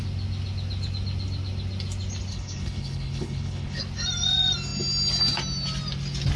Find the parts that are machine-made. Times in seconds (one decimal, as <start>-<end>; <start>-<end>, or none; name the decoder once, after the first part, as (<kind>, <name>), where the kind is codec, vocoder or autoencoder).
2.3-3.8 (codec, HILCodec)